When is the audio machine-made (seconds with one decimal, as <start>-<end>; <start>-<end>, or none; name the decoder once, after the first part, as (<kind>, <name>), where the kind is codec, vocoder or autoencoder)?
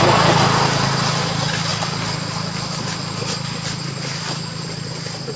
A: none